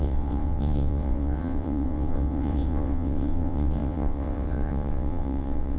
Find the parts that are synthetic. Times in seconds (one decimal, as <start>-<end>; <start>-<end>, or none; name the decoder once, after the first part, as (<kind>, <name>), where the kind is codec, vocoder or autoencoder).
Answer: 0.0-5.8 (vocoder, WaveNeXt)